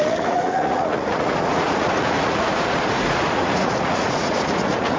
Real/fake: fake